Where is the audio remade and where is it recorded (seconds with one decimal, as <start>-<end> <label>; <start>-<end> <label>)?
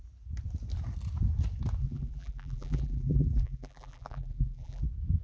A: 0.0-1.8 recorded; 1.8-4.8 remade; 4.8-5.2 recorded